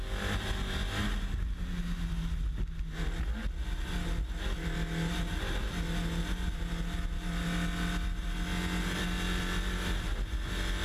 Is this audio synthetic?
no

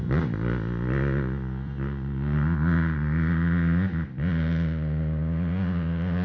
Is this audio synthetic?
no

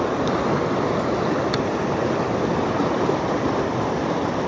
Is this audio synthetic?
no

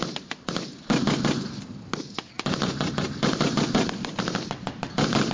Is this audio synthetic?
no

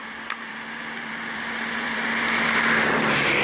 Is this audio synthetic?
yes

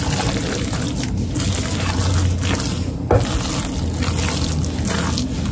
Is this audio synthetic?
no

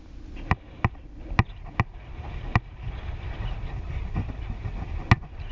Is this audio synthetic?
no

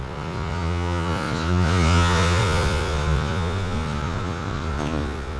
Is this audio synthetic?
yes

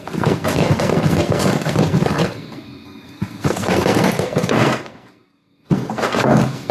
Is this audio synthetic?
yes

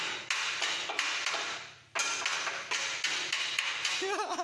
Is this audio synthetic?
no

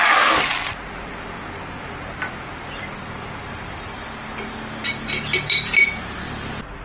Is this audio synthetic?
no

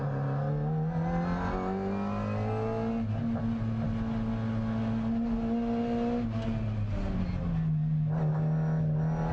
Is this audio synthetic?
no